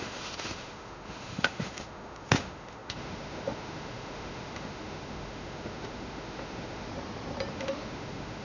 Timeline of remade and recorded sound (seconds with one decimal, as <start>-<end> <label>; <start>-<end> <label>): 0.0-6.9 remade; 6.9-7.5 recorded; 7.5-8.4 remade